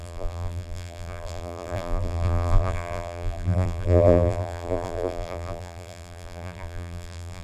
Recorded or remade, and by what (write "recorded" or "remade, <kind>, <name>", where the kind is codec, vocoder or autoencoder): remade, vocoder, BigVGAN v2